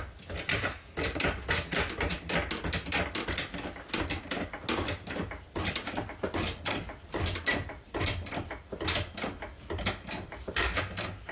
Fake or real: real